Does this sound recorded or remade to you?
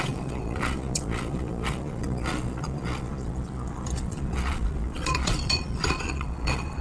remade